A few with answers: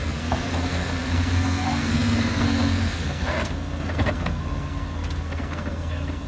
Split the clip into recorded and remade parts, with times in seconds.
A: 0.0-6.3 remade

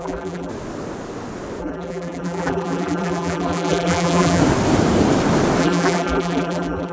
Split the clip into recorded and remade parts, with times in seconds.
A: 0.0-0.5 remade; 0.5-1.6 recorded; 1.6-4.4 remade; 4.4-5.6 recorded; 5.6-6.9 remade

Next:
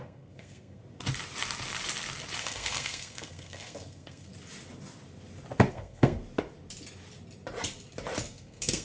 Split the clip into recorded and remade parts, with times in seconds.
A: 0.0-0.8 remade; 0.8-2.4 recorded; 2.4-4.3 remade; 4.3-5.7 recorded; 5.7-6.2 remade; 6.2-8.3 recorded; 8.3-8.8 remade